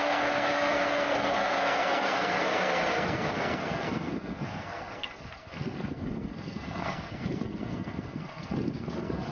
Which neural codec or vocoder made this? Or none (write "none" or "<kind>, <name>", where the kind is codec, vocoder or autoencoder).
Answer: codec, SNAC